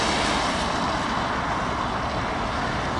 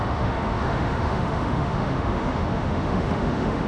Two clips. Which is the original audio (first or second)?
first